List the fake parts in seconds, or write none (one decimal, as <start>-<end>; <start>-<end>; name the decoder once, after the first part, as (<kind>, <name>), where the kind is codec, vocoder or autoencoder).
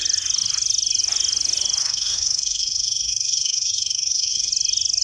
1.8-4.5 (codec, SNAC)